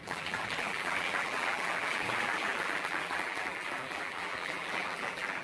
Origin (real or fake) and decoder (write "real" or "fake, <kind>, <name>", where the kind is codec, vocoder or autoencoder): fake, vocoder, BigVGAN v2